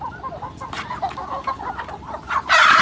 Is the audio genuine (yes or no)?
yes